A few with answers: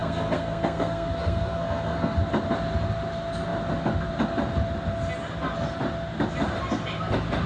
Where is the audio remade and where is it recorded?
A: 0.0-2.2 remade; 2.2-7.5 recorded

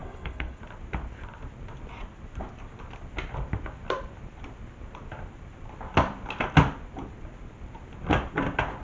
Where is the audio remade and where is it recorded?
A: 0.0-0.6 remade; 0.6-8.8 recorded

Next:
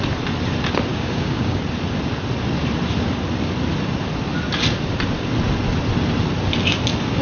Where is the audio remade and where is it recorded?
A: 0.0-0.9 recorded; 0.9-1.6 remade; 1.6-7.2 recorded

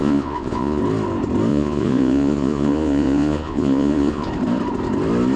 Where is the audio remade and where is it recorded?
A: 0.0-0.8 remade; 0.8-1.5 recorded; 1.5-4.3 remade; 4.3-5.4 recorded

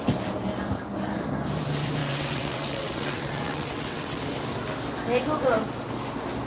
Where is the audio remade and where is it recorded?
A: 0.0-2.0 recorded; 2.0-4.2 remade; 4.2-6.5 recorded

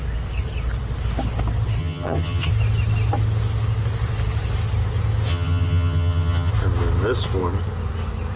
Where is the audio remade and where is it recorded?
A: 0.0-1.8 recorded; 1.8-2.5 remade; 2.5-5.3 recorded; 5.3-6.5 remade; 6.5-8.4 recorded

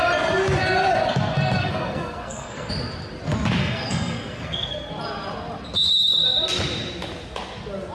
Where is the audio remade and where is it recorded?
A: 0.0-1.6 recorded; 1.6-2.7 remade; 2.7-3.6 recorded; 3.6-4.9 remade; 4.9-7.9 recorded